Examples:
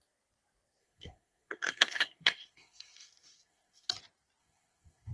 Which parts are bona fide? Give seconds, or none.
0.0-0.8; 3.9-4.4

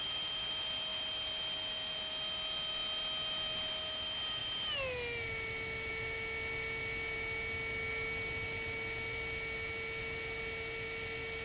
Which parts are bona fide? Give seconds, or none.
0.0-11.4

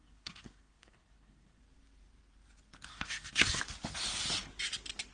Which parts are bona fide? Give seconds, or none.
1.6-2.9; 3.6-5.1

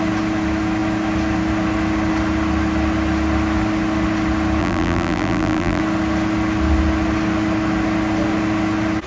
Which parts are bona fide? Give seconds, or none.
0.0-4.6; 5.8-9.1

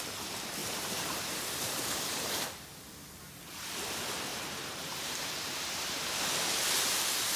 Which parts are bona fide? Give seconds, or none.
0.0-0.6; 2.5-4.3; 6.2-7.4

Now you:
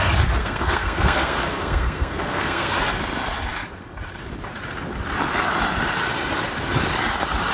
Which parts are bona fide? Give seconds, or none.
0.0-0.4; 2.8-7.5

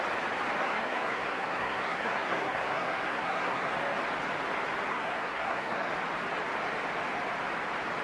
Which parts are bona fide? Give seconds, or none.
0.0-0.6; 3.7-4.9; 5.9-8.0